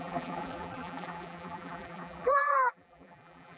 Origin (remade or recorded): remade